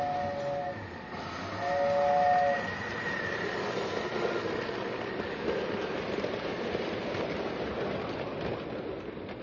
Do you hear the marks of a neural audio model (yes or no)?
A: no